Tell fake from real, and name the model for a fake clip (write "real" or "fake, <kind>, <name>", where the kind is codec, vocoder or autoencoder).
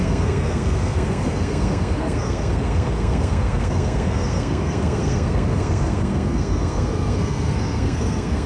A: fake, codec, SNAC